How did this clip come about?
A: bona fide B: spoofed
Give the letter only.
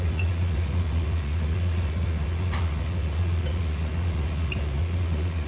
B